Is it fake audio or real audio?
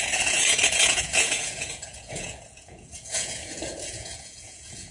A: fake